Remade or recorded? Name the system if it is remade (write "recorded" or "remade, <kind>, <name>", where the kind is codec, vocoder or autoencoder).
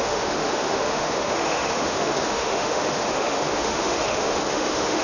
remade, autoencoder, DAC-VAE